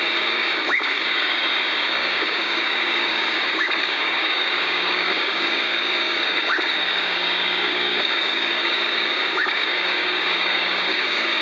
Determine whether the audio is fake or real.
fake